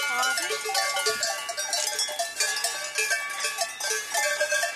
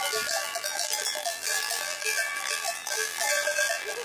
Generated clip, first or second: second